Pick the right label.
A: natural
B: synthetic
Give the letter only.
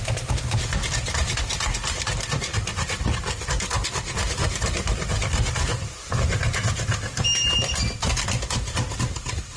A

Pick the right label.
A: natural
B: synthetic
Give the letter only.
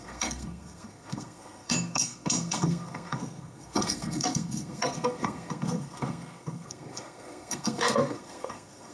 B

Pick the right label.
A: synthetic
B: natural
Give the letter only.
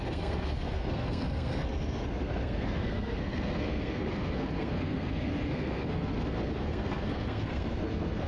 A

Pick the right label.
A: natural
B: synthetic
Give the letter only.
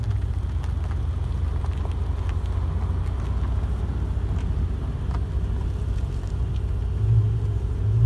A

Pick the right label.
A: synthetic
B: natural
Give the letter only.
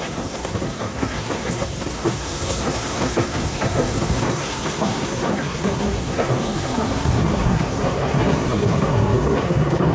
A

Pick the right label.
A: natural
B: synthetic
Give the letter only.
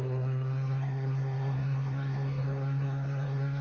B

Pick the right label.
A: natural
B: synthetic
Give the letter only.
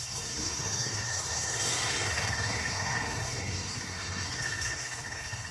B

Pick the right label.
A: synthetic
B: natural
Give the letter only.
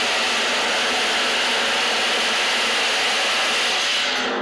B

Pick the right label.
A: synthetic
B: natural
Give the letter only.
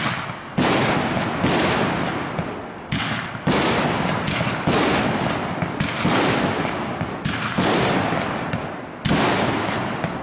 B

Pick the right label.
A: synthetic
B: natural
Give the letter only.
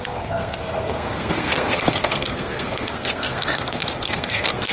A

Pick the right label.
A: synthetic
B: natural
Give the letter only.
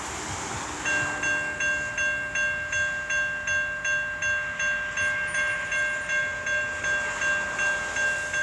B